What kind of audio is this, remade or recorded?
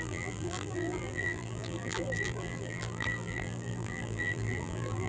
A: remade